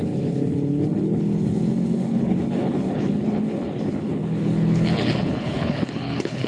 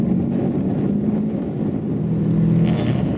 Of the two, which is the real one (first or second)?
second